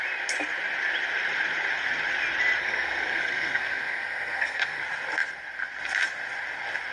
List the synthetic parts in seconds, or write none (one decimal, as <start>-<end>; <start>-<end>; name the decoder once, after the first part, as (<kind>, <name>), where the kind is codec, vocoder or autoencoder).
2.6-4.8 (codec, SNAC)